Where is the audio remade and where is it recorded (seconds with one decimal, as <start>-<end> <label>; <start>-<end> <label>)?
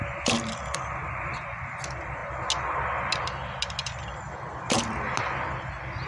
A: 0.0-1.0 recorded; 1.0-1.6 remade; 1.6-6.1 recorded